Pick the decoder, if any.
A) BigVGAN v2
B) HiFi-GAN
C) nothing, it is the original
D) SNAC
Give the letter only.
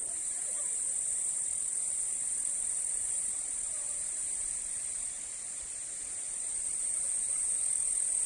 A